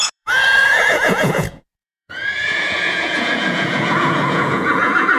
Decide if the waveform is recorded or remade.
remade